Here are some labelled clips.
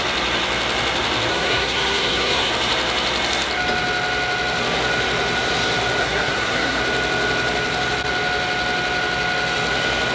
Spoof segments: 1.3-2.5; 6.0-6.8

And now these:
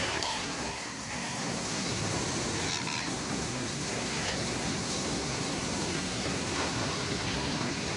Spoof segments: 0.0-2.2; 3.0-8.0

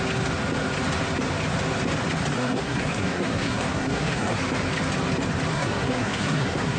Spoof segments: 2.3-4.4; 5.5-6.8

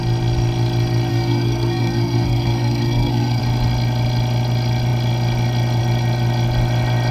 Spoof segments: 1.1-3.4

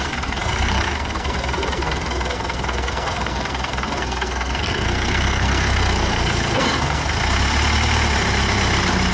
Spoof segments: 0.0-7.0

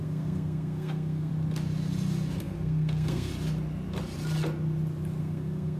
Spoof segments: 0.0-1.3; 2.4-3.3; 5.2-5.8

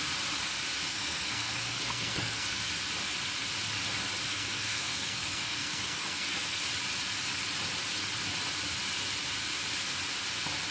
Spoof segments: 0.9-2.7; 4.3-6.6